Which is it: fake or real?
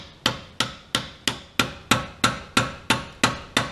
real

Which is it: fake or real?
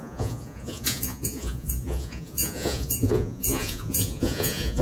fake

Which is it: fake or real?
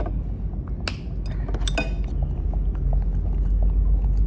real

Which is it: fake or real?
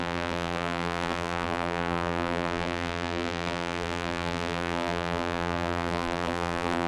fake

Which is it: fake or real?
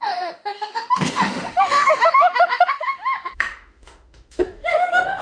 fake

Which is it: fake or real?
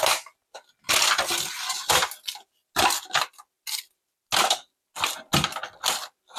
real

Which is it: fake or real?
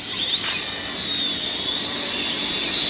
real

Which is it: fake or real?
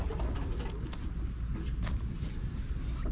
real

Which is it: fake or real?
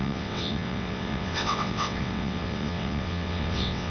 fake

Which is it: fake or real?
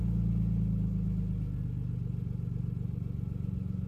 real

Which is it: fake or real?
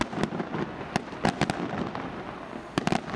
real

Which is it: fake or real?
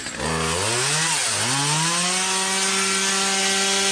real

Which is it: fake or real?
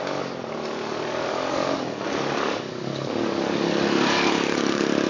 fake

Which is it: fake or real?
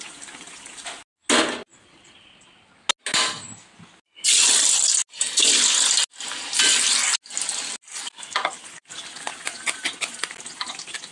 real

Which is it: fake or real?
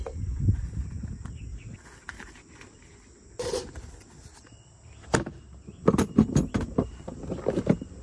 real